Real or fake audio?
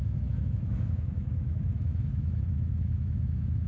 fake